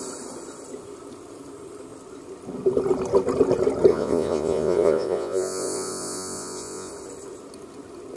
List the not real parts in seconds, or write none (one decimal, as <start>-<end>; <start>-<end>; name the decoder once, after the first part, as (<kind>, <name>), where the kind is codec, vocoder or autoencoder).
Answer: 3.9-6.9 (vocoder, Vocos)